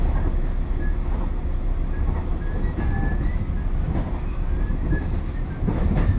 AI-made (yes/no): no